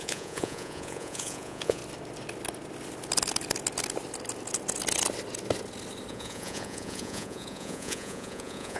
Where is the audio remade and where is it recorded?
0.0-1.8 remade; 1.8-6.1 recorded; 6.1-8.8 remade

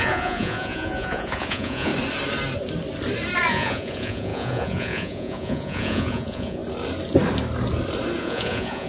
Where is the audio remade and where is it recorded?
0.0-1.9 remade; 1.9-3.5 recorded; 3.5-6.6 remade; 6.6-8.2 recorded; 8.2-8.9 remade

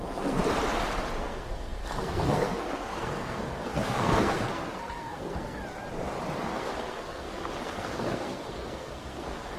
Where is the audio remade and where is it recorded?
0.0-0.4 remade; 0.4-1.2 recorded; 1.2-5.6 remade; 5.6-6.4 recorded; 6.4-9.6 remade